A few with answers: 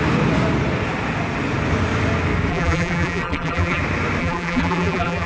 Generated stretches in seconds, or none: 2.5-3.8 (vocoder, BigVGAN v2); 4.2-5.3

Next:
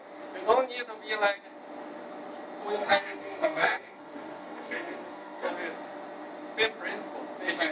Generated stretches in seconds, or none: 2.7-5.5 (codec, SNAC)

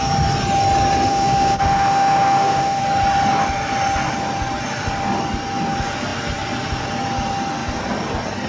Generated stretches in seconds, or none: 1.1-2.8 (autoencoder, DAC-VAE)

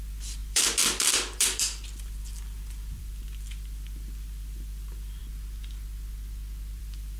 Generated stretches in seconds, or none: 0.0-5.2 (vocoder, BigVGAN v2); 6.8-7.2

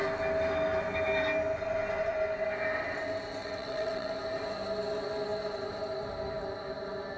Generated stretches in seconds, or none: 3.4-4.1 (vocoder, WaveNeXt)

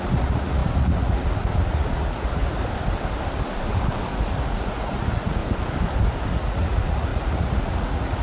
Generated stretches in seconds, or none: 0.0-2.4 (vocoder, Vocos); 4.1-5.4; 6.2-8.2

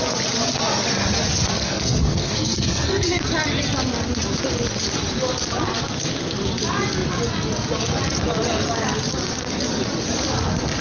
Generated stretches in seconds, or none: 1.6-3.2 (codec, SNAC)